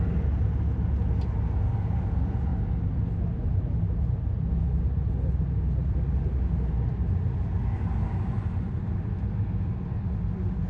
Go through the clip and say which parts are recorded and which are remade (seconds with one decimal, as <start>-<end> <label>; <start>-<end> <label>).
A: 0.0-10.7 recorded